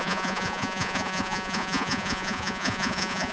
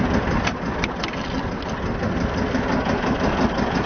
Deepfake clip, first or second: first